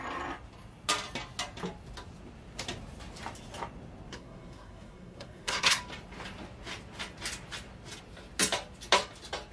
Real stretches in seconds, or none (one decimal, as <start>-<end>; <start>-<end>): 0.0-4.1; 5.8-9.5